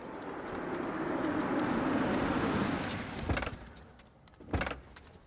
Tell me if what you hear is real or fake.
real